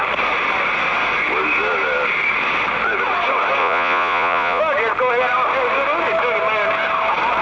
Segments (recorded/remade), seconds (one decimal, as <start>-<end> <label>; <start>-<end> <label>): 0.0-3.6 recorded; 3.6-4.6 remade; 4.6-7.4 recorded